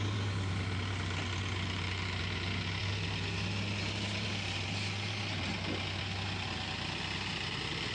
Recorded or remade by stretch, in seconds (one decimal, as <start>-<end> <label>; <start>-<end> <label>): 0.0-7.9 recorded